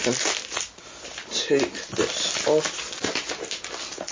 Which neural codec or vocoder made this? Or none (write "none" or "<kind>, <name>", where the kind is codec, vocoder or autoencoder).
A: none